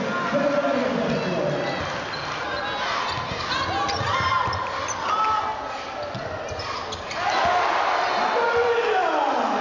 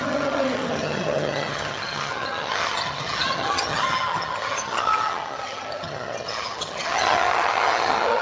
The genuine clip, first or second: first